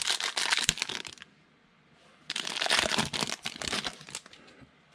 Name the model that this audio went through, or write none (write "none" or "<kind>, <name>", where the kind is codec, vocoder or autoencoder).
none